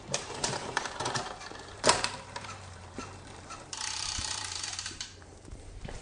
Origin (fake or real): fake